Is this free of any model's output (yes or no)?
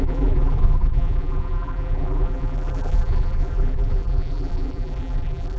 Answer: no